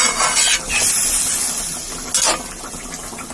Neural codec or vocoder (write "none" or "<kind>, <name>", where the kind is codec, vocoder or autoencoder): none